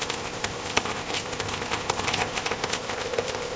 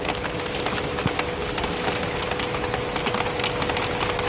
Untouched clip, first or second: second